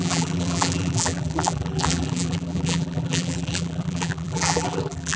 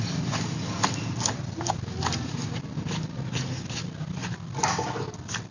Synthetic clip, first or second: first